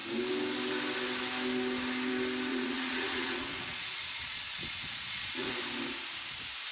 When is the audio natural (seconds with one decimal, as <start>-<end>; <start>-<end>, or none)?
0.0-2.5; 5.5-6.7